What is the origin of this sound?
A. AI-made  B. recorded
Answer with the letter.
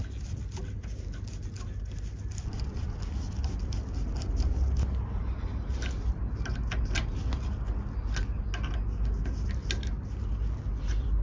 B